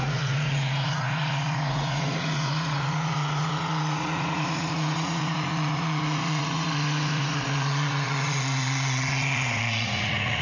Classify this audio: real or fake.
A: fake